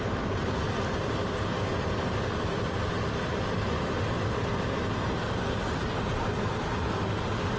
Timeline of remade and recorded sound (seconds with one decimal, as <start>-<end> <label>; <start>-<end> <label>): 0.0-7.6 recorded